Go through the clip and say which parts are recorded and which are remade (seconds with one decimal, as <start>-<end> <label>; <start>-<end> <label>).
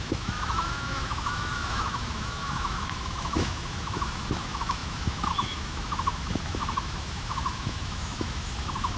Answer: 0.0-9.0 remade